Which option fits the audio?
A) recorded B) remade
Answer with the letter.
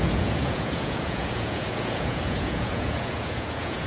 B